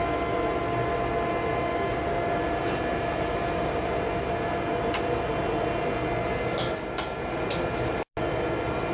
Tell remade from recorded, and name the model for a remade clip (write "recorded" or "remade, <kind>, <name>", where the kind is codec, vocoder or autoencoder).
recorded